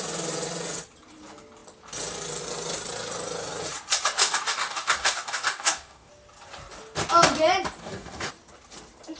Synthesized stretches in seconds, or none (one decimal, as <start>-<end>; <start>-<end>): 4.2-6.1; 7.8-8.3